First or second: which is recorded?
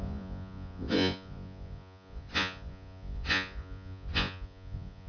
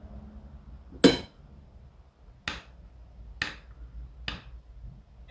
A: second